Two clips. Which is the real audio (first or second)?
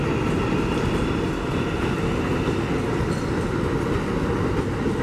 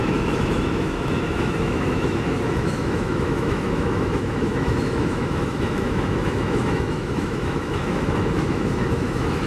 first